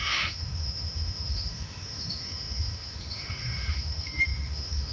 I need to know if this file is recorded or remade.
remade